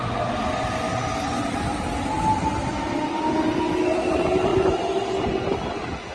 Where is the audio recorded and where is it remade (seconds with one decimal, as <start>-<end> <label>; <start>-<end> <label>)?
0.0-6.1 recorded